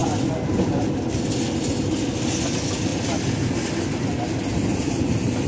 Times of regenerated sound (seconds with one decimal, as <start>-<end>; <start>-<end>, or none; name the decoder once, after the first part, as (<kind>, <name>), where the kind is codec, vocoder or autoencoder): none